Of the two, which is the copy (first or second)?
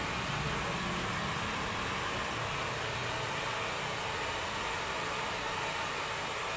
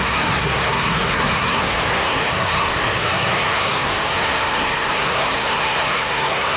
second